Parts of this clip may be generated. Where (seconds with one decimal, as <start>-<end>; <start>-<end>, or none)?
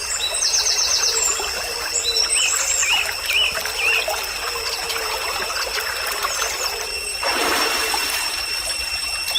7.3-8.4